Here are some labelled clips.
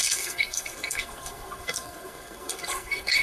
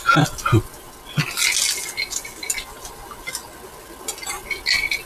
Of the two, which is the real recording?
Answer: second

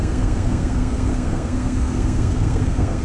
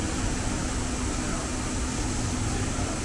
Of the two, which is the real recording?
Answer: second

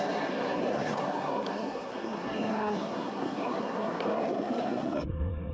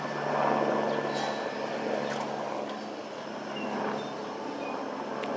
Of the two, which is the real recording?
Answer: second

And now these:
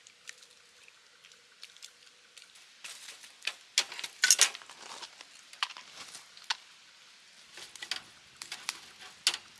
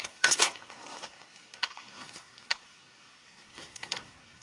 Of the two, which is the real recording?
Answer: first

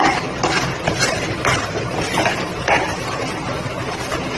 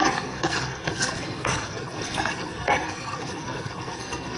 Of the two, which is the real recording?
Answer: first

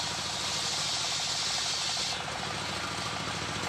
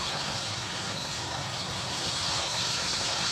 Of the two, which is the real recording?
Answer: first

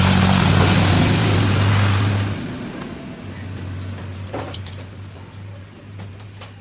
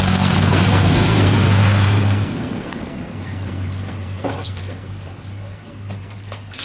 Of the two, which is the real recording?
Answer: first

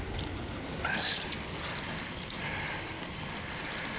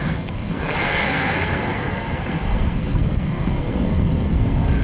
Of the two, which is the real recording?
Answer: first